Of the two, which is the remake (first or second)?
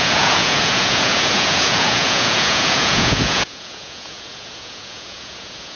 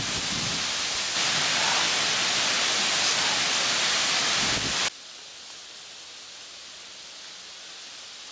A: first